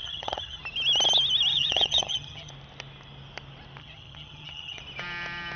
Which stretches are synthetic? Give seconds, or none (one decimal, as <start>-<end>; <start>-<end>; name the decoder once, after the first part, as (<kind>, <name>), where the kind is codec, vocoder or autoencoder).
0.0-0.6 (vocoder, HiFi-GAN); 1.5-2.5; 3.8-4.8